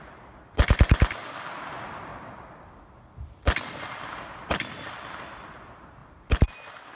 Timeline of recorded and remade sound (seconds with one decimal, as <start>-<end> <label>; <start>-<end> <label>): 0.0-2.1 recorded; 2.1-4.9 remade; 4.9-6.0 recorded; 6.0-7.0 remade

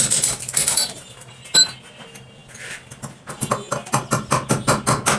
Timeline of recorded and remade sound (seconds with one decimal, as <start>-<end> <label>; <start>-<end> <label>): 0.0-5.2 recorded

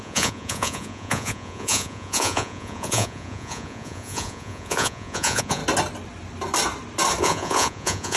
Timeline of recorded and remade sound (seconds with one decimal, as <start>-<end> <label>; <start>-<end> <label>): 0.0-5.6 remade; 5.6-7.2 recorded; 7.2-8.2 remade

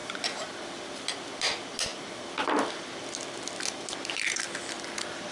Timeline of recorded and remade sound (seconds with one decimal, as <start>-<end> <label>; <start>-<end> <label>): 0.0-5.3 recorded

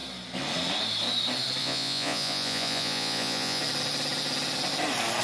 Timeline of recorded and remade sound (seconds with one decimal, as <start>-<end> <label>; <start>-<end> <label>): 0.0-1.6 recorded; 1.6-3.6 remade; 3.6-5.2 recorded